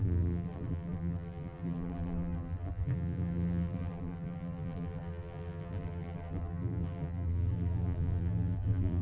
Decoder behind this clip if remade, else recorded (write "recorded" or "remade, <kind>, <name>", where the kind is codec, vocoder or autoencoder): remade, vocoder, BigVGAN v2